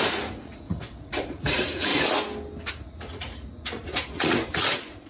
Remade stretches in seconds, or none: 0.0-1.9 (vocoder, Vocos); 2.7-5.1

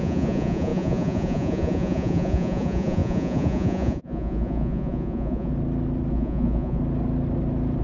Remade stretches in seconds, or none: 0.0-5.5 (vocoder, Vocos); 6.1-6.8

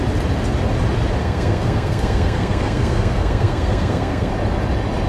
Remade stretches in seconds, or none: 1.2-4.3 (codec, SNAC)

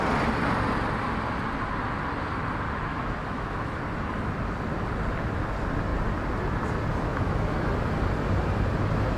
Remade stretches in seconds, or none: 2.9-3.8 (autoencoder, DAC-VAE); 7.1-7.7

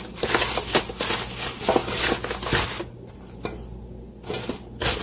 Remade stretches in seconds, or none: none

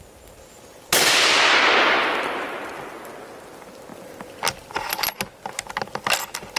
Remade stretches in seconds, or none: 2.0-3.1 (vocoder, BigVGAN v2)

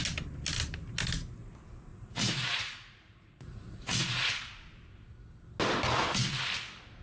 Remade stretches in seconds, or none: 1.9-4.3 (vocoder, Vocos)